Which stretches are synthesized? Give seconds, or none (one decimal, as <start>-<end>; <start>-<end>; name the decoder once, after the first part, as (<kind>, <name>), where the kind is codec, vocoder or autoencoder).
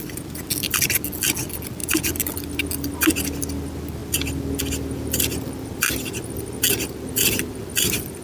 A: none